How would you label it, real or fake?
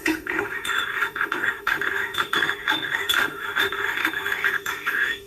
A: fake